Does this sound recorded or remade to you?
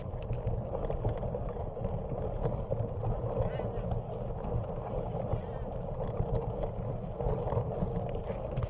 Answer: recorded